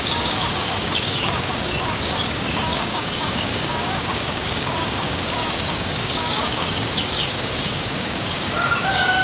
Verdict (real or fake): fake